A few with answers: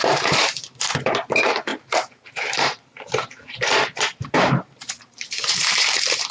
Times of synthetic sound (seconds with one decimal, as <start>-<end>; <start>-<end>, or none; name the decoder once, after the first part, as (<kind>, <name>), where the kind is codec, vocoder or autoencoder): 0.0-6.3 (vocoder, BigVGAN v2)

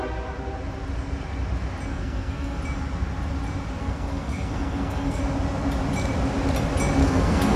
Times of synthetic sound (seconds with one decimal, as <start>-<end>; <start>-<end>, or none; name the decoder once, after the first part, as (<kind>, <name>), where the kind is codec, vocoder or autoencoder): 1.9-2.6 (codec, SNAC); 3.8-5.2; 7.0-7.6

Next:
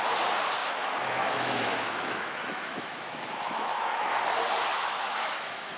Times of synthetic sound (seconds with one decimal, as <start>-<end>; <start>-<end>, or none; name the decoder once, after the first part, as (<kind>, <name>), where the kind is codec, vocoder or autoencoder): 0.6-4.1 (autoencoder, DAC-VAE); 4.7-5.8